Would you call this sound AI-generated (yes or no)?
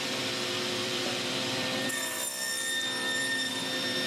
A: yes